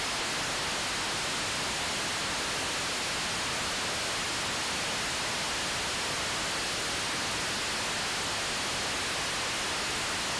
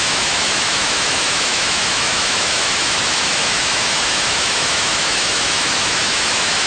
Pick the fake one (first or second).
second